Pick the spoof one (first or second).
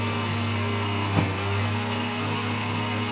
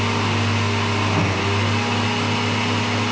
first